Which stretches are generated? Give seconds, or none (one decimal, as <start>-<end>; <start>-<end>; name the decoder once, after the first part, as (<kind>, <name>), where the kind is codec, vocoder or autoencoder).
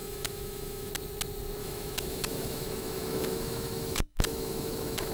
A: 0.0-0.9 (autoencoder, DAC-VAE); 1.6-5.1